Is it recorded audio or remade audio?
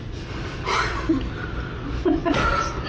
recorded